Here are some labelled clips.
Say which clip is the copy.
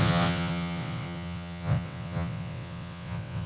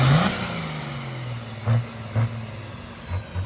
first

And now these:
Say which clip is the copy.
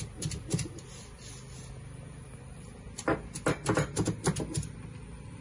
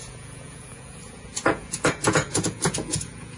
second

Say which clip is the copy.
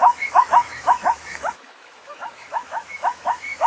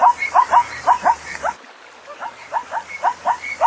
first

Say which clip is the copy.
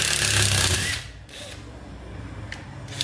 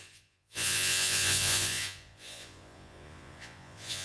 second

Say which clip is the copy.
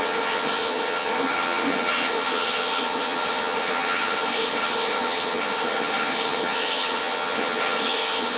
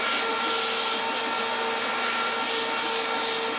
first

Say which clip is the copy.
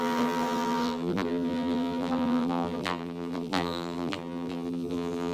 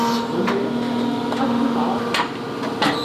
first